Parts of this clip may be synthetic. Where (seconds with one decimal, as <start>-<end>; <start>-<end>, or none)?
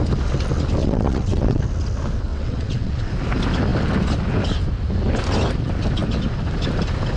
0.8-1.6; 2.3-3.1